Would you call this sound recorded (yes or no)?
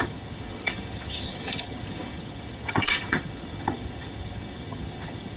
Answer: no